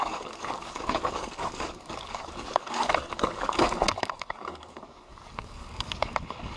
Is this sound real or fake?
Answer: fake